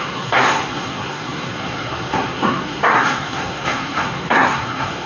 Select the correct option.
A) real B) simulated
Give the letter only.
B